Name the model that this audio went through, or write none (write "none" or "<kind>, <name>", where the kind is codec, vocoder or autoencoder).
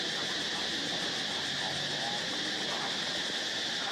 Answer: none